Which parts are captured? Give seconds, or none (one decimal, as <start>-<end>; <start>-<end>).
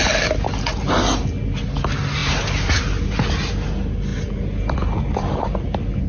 0.0-6.1